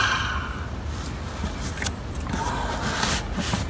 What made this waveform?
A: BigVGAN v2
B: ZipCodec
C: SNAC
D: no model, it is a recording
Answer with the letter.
D